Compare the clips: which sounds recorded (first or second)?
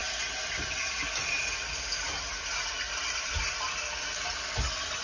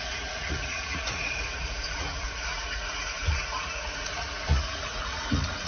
first